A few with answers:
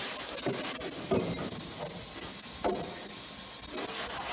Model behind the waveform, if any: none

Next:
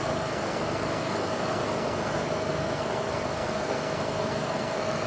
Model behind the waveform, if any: codec, SNAC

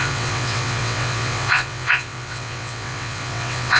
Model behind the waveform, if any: vocoder, WaveNeXt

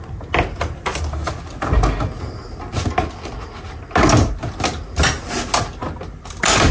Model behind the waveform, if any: none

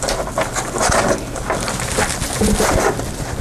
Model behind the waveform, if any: none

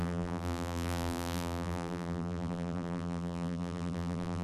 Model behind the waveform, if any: vocoder, BigVGAN v2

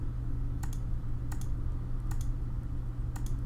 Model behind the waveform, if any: none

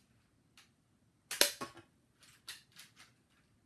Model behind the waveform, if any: none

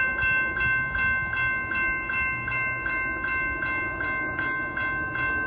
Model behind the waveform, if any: none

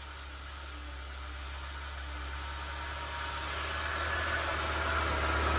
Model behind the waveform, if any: none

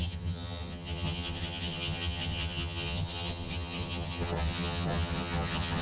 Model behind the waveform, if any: vocoder, HiFi-GAN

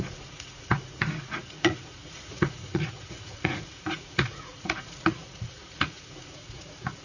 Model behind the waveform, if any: vocoder, Vocos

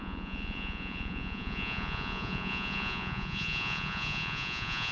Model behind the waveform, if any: vocoder, Vocos